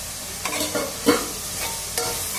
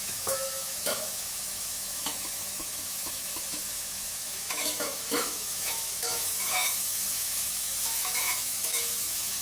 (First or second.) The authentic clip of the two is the first